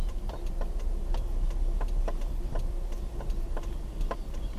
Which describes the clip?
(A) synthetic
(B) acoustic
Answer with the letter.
B